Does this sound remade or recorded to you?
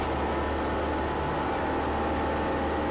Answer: recorded